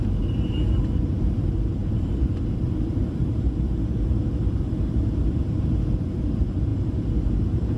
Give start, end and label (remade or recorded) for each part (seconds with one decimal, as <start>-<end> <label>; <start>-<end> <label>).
0.0-7.8 remade